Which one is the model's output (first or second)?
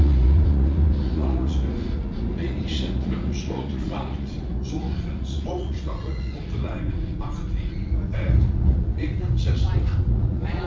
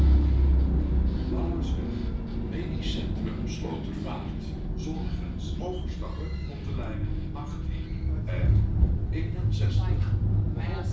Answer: first